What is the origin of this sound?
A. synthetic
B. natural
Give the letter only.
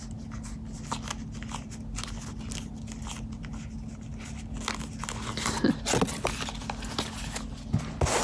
B